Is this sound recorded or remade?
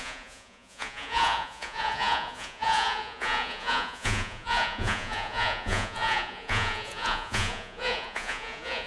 remade